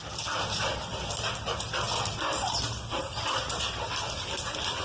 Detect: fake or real real